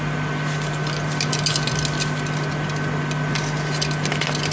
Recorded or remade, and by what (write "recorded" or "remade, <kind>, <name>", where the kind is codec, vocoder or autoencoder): recorded